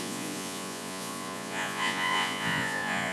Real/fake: fake